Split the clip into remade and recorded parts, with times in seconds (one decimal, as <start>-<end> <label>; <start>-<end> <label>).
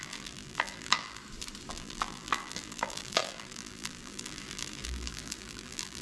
0.0-1.2 remade; 1.2-1.7 recorded; 1.7-6.0 remade